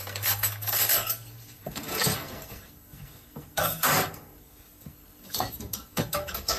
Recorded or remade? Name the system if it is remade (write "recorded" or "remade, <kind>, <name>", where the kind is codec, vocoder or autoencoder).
remade, codec, SNAC